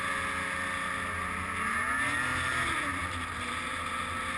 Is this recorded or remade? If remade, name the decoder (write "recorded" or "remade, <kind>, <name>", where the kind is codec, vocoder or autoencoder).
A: recorded